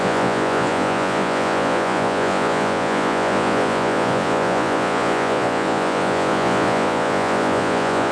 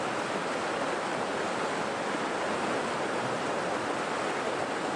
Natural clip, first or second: second